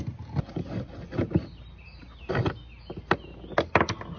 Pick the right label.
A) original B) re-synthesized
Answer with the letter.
A